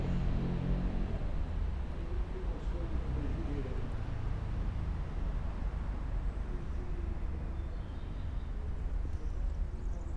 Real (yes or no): yes